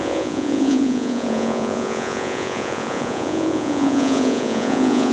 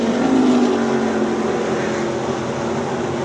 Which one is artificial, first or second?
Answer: first